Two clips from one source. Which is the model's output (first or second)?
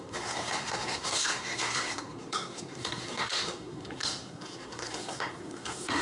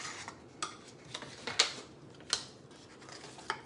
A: first